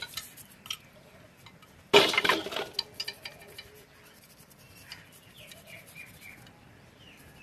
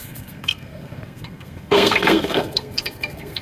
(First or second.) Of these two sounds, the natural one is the first